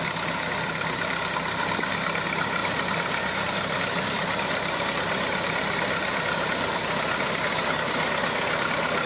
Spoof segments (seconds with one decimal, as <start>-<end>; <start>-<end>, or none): 2.6-7.5